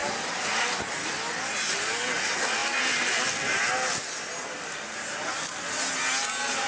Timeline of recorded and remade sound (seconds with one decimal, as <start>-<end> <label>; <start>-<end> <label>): 0.0-6.7 recorded